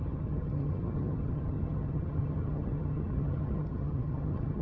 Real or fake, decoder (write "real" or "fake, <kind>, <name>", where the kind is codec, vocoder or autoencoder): fake, vocoder, HiFi-GAN